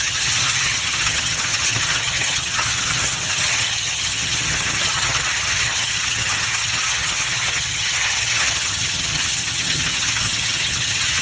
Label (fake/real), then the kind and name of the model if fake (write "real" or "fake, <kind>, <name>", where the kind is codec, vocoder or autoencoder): fake, vocoder, HiFi-GAN